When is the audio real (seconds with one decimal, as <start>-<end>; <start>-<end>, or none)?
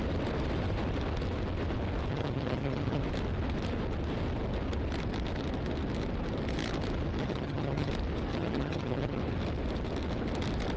0.0-2.1; 3.0-7.2; 7.9-8.3; 9.2-10.8